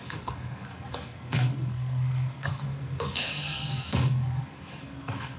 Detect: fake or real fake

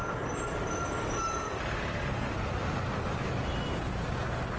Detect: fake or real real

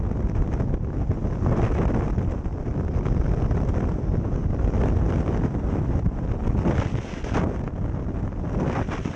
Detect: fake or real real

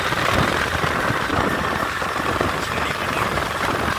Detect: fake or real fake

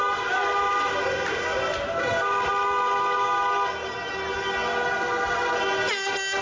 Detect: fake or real real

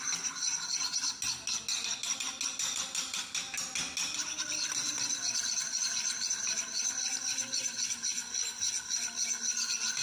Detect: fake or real real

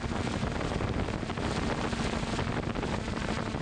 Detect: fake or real real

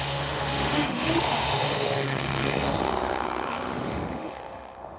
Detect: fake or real fake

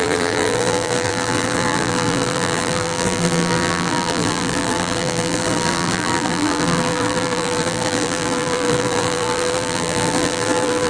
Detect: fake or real fake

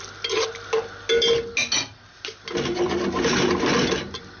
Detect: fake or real real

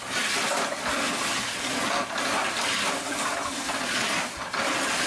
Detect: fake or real real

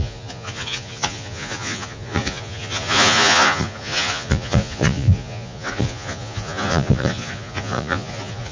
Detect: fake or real fake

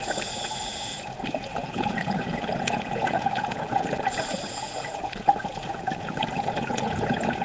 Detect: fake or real fake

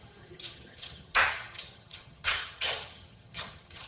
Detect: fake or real fake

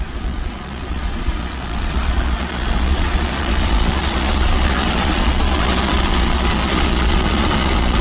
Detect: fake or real fake